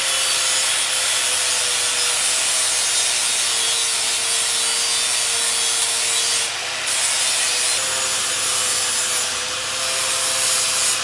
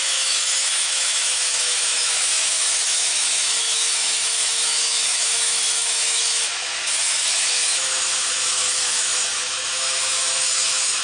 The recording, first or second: first